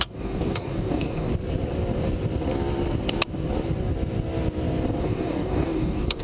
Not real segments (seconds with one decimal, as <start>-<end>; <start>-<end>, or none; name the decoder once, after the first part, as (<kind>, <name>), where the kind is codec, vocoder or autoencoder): 0.0-1.3 (codec, DAC); 5.0-6.2